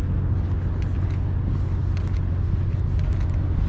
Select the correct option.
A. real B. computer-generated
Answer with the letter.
A